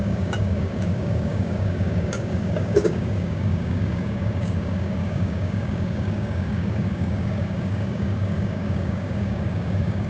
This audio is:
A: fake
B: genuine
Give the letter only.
A